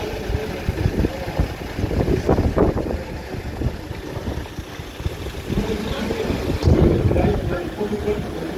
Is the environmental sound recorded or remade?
recorded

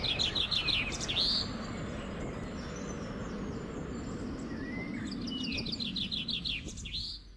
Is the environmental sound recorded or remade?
recorded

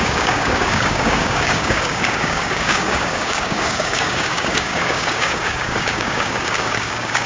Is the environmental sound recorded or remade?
remade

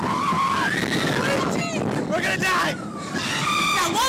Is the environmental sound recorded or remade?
recorded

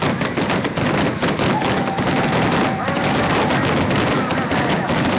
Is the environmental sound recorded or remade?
recorded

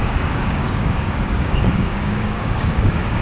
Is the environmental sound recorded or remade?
remade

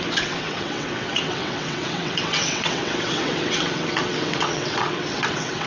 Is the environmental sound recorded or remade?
remade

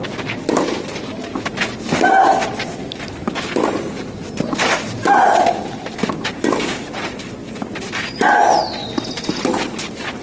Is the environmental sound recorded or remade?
recorded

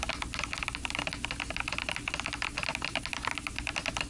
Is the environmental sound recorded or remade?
recorded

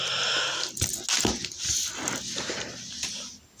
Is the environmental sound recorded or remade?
recorded